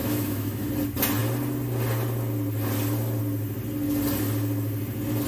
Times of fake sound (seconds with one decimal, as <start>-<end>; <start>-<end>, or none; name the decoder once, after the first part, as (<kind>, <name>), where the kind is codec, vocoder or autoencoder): 0.0-0.7 (autoencoder, DAC-VAE)